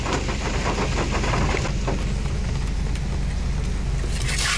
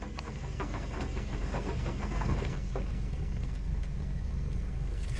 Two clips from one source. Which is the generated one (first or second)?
second